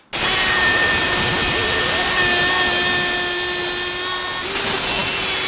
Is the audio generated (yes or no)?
no